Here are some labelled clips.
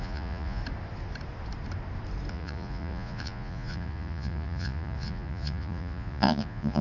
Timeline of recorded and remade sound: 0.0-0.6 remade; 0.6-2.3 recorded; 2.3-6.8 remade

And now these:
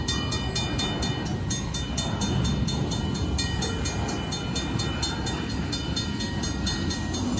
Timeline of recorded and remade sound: 0.0-7.4 recorded